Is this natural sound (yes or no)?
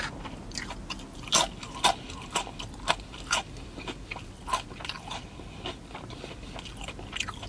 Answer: yes